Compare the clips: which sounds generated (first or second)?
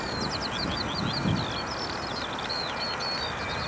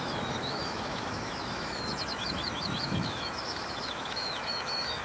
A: second